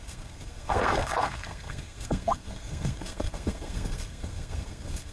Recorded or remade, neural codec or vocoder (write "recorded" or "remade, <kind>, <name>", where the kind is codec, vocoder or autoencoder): remade, codec, SNAC